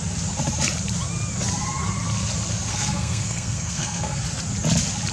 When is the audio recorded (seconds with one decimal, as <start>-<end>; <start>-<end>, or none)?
0.0-2.7; 4.2-5.1